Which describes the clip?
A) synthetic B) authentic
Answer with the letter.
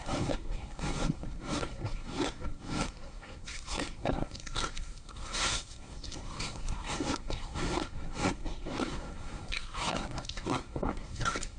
A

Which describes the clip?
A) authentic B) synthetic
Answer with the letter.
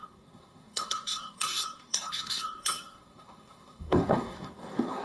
B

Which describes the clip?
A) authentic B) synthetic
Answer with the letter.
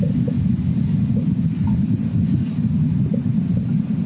A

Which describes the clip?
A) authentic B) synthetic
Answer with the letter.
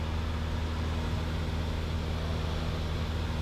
A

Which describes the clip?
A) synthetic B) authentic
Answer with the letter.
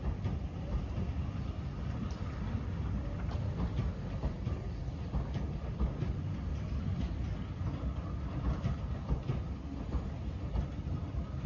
B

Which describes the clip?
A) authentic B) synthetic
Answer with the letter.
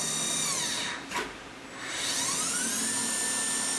A